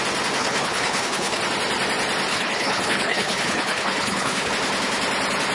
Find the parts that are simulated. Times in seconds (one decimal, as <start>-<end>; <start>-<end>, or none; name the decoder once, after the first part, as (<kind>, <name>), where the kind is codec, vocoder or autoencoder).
0.4-1.4 (codec, HILCodec); 2.3-4.5